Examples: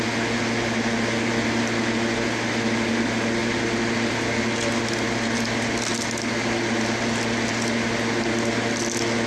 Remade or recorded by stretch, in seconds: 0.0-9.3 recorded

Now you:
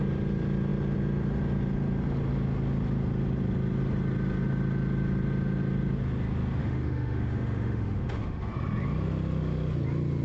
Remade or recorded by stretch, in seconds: 0.0-6.6 recorded; 6.6-8.5 remade; 8.5-10.2 recorded

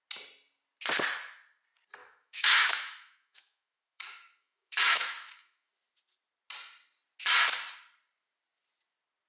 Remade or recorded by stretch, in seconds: 0.0-2.0 recorded; 2.0-5.7 remade; 5.7-9.3 recorded

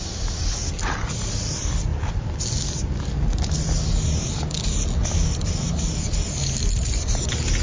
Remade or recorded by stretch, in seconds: 0.0-7.6 recorded

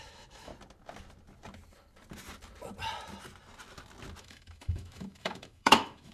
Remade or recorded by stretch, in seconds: 0.0-0.5 remade; 0.5-4.2 recorded; 4.2-6.1 remade

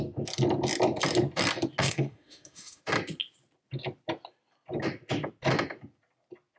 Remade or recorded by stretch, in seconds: 0.0-1.8 recorded; 1.8-2.8 remade; 2.8-6.6 recorded

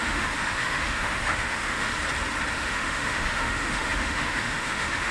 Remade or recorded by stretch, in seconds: 0.0-1.9 remade; 1.9-2.5 recorded; 2.5-5.1 remade